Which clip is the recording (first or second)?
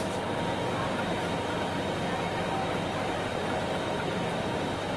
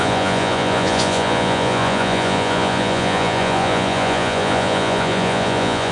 first